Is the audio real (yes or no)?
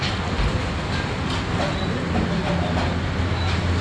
yes